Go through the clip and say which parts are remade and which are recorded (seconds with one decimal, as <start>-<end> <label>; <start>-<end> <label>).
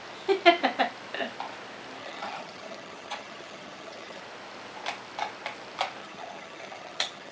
0.0-2.0 recorded; 2.0-4.2 remade; 4.2-6.0 recorded; 6.0-7.3 remade